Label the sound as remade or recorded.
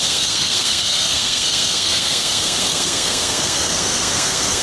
remade